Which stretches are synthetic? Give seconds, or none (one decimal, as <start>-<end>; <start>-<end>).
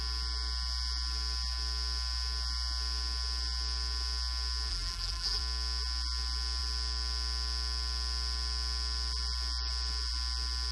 4.7-5.4